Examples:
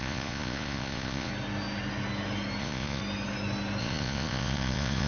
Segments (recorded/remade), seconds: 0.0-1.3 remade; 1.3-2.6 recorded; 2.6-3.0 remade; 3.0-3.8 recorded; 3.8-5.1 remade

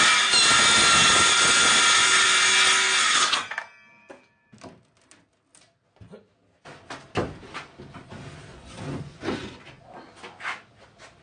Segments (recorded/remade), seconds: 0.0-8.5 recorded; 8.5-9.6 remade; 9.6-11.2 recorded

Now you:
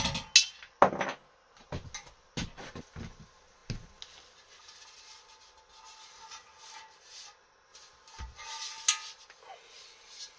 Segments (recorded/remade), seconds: 0.0-10.4 recorded

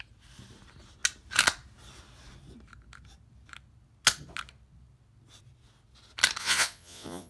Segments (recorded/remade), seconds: 0.0-6.4 recorded; 6.4-7.3 remade

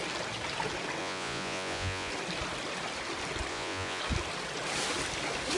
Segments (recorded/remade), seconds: 0.0-1.0 recorded; 1.0-2.1 remade; 2.1-3.5 recorded; 3.5-4.0 remade; 4.0-5.6 recorded